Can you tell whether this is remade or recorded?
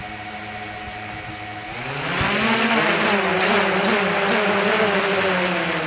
recorded